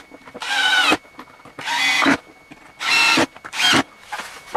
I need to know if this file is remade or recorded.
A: recorded